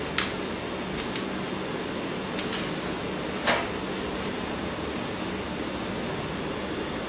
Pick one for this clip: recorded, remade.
recorded